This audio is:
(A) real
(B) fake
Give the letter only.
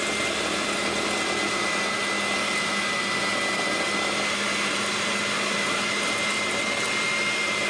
A